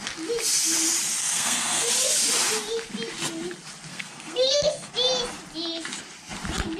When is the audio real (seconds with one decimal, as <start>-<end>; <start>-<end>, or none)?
0.0-1.2; 1.9-3.9; 4.9-6.8